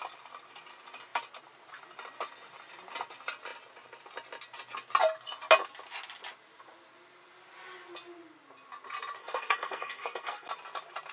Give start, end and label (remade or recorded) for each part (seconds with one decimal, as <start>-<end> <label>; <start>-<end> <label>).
0.0-9.2 recorded; 9.2-10.5 remade; 10.5-11.1 recorded